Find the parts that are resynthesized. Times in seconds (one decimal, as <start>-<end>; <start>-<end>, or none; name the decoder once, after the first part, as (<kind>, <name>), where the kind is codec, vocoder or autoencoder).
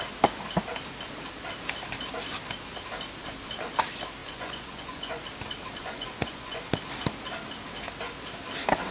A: 4.2-5.2 (vocoder, Vocos); 5.8-6.6